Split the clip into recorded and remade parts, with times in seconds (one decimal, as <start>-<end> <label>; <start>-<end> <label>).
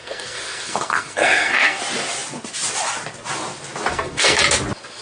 0.0-1.8 remade; 1.8-3.9 recorded; 3.9-4.4 remade; 4.4-5.0 recorded